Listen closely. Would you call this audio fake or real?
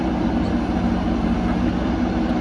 real